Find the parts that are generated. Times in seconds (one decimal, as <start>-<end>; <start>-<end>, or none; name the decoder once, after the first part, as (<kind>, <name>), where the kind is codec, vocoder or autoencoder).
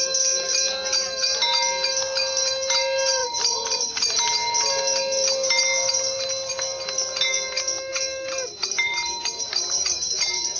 none